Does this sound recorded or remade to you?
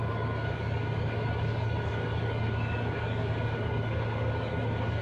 remade